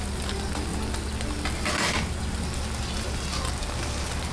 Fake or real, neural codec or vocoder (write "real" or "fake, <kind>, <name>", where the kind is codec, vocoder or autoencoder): real